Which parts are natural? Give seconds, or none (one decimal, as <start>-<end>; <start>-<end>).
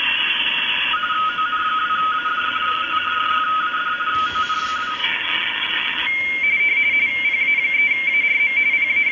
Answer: 0.0-2.4; 3.4-5.0; 6.0-9.1